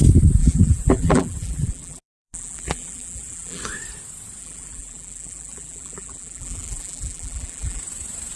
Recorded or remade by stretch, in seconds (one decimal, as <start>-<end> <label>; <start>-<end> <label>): 0.0-0.4 recorded; 0.4-3.6 remade; 3.6-4.4 recorded; 4.4-7.8 remade; 7.8-8.4 recorded